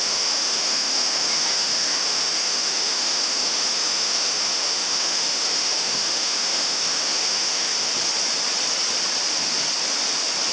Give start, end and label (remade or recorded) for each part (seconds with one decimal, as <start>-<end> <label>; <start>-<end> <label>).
0.0-7.9 remade; 7.9-10.5 recorded